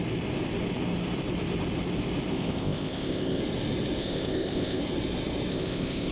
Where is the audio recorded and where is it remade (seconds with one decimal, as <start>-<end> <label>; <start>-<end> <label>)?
0.0-2.3 recorded; 2.3-3.4 remade; 3.4-4.0 recorded; 4.0-4.8 remade; 4.8-5.5 recorded; 5.5-6.1 remade